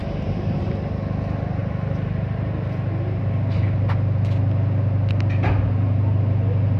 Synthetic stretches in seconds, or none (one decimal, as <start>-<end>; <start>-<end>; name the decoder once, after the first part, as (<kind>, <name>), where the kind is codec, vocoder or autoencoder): 1.6-3.2 (vocoder, BigVGAN v2)